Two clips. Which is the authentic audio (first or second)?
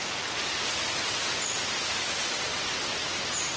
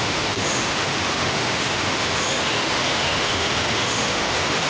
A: first